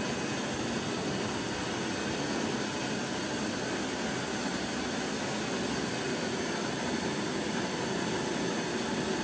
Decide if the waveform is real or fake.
real